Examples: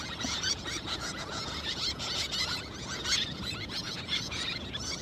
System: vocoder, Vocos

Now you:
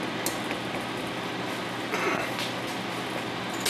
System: none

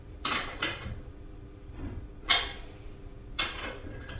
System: vocoder, Vocos